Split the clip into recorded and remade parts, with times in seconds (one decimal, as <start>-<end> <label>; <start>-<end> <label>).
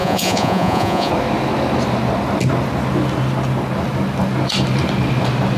0.0-1.1 remade; 1.1-5.6 recorded